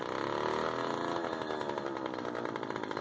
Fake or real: real